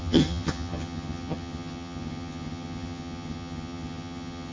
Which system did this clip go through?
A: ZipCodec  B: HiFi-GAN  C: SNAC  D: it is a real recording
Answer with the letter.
B